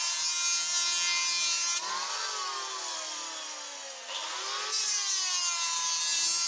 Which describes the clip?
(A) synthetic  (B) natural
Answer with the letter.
B